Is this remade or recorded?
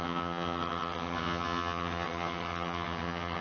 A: remade